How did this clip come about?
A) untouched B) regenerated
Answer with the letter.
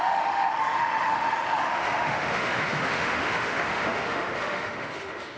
B